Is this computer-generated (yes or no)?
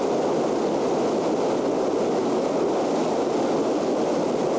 no